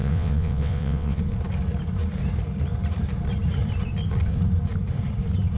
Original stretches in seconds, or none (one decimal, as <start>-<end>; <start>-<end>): 1.2-5.6